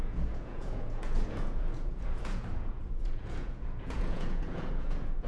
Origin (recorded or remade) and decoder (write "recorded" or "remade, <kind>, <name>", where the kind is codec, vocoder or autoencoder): remade, vocoder, Vocos